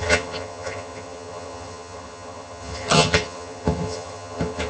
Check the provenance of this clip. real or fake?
fake